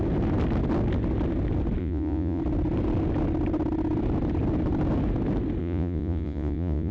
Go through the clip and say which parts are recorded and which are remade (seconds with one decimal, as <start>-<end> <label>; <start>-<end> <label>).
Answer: 0.0-1.8 recorded; 1.8-2.4 remade; 2.4-5.6 recorded; 5.6-6.9 remade